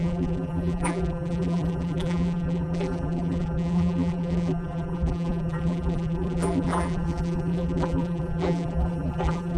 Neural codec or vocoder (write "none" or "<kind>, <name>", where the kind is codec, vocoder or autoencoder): vocoder, BigVGAN v2